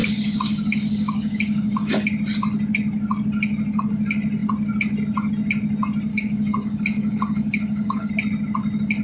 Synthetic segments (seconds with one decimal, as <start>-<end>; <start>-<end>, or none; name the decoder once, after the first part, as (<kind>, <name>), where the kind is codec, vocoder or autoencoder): 0.0-1.9 (codec, DAC); 6.1-8.1